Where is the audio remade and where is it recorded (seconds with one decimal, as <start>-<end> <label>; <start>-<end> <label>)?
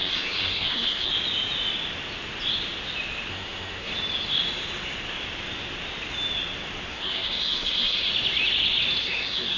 0.0-1.1 remade; 1.1-3.3 recorded; 3.3-3.9 remade; 3.9-6.9 recorded; 6.9-8.1 remade; 8.1-9.0 recorded; 9.0-9.6 remade